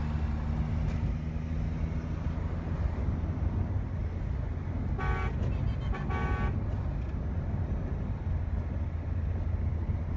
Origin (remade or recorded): recorded